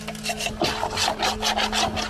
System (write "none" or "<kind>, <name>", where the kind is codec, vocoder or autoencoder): none